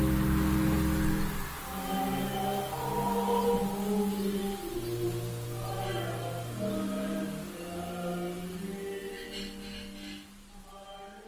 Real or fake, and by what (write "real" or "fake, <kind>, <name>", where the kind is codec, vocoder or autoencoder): real